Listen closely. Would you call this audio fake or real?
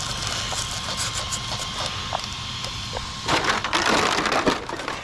real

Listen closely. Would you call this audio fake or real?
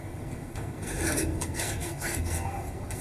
fake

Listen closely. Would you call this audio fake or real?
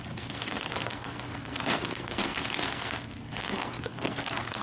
fake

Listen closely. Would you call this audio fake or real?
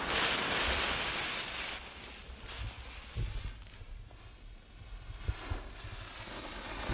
real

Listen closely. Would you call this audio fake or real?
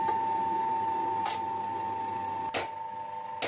real